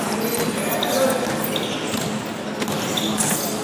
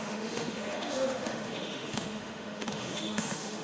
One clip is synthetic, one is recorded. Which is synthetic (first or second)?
second